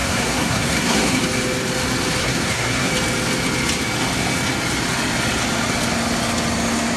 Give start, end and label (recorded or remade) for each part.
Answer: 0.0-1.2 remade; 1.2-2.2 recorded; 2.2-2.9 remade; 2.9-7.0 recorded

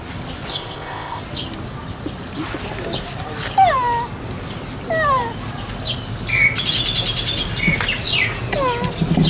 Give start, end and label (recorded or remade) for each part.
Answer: 0.0-0.5 recorded; 0.5-1.2 remade; 1.2-9.3 recorded

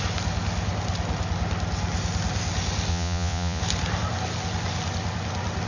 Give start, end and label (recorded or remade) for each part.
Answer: 0.0-2.9 recorded; 2.9-3.6 remade; 3.6-5.7 recorded

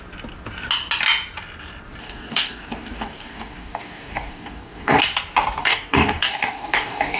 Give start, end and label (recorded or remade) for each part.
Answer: 0.0-2.0 recorded; 2.0-5.0 remade; 5.0-5.6 recorded; 5.6-7.2 remade

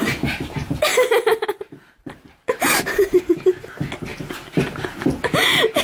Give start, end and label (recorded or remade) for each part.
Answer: 0.0-0.6 recorded; 0.6-3.2 remade; 3.2-5.8 recorded